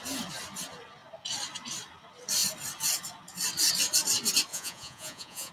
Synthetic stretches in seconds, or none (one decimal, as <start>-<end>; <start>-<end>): 4.5-5.5